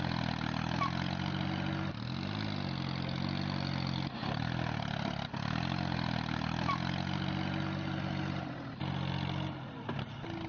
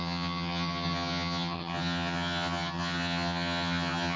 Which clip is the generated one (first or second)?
second